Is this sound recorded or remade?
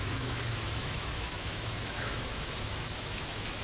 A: remade